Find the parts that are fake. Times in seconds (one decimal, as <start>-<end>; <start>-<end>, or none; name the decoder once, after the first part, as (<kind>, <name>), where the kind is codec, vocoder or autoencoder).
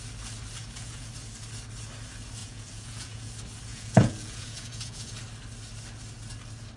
0.6-1.1 (vocoder, Vocos); 2.4-3.3; 3.7-5.2